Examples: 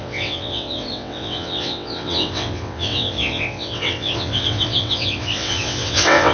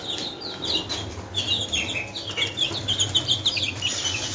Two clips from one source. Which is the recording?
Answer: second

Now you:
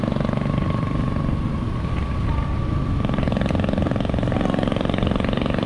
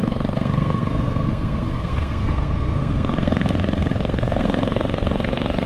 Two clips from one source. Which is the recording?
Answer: first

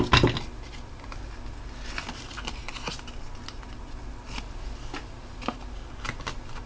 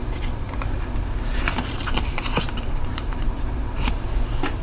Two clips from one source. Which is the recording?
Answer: first